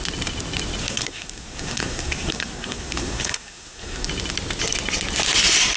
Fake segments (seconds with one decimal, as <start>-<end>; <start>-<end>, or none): 0.8-4.1